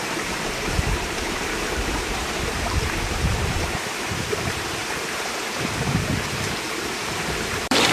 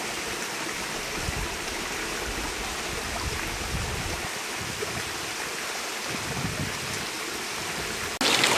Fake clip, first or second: first